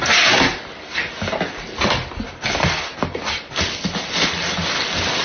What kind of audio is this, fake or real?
real